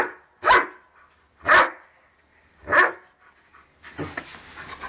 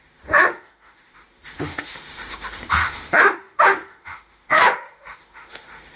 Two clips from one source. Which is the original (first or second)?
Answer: first